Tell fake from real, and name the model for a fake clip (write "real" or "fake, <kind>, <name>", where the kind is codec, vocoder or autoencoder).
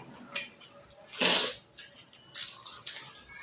real